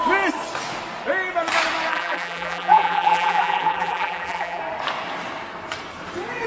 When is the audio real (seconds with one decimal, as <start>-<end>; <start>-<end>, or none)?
0.0-1.9; 4.6-6.5